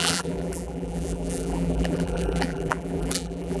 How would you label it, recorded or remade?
remade